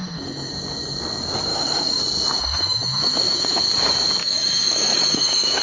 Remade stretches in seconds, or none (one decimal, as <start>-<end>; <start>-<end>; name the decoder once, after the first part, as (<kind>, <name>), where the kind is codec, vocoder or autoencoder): 0.0-0.5 (autoencoder, DAC-VAE); 1.5-2.0; 2.4-3.6; 4.2-5.6